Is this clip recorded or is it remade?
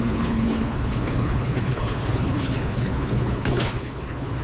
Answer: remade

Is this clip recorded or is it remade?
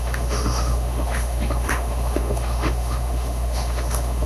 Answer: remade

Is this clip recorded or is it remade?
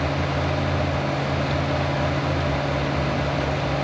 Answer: recorded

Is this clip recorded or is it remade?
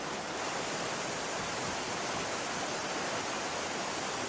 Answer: recorded